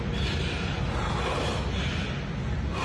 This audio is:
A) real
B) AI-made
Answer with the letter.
A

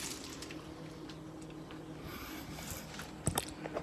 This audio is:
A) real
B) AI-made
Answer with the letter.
A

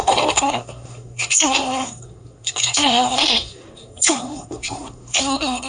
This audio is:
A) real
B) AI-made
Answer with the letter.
B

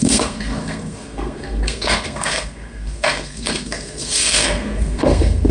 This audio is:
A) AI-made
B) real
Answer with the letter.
A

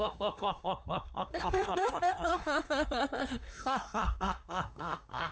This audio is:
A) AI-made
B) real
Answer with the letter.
A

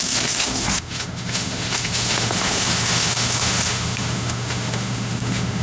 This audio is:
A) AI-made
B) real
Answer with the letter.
A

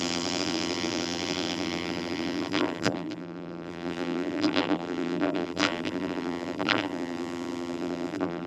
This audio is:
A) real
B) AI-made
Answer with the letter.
B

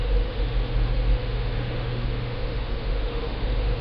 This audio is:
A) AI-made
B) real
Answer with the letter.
A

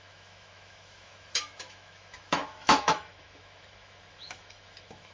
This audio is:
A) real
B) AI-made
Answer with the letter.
B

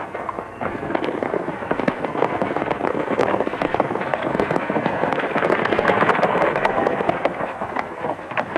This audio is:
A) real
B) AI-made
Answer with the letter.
B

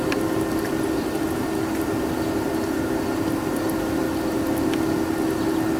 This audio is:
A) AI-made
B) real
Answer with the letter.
B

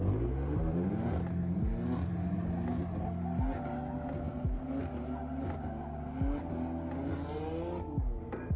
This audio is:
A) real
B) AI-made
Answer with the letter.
A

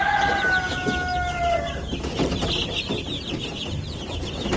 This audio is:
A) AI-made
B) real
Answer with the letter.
B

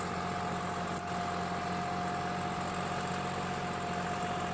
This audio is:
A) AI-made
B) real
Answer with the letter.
B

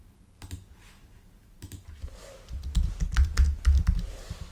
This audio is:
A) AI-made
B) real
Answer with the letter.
B